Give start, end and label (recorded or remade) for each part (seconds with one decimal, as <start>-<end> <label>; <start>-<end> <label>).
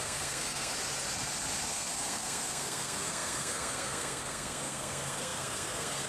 0.0-0.7 remade; 0.7-1.7 recorded; 1.7-6.1 remade